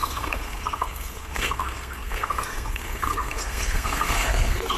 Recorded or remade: remade